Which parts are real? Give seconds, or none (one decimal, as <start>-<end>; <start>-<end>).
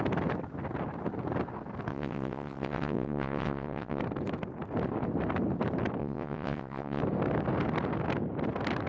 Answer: 0.0-1.9; 4.0-6.0; 7.0-8.9